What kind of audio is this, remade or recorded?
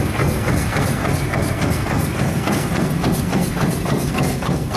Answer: remade